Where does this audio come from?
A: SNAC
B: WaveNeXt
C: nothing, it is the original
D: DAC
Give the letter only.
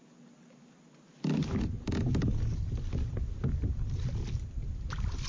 C